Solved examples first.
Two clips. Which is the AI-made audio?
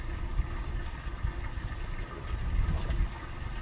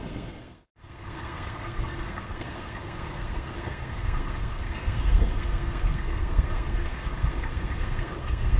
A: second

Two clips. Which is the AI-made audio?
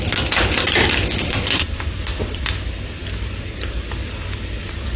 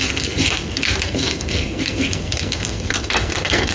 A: second